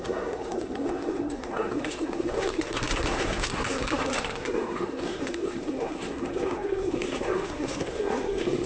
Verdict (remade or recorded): remade